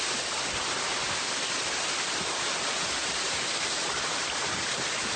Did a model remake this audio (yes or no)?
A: no